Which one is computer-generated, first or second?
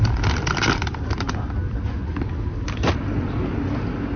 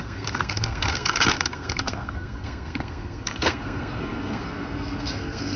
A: second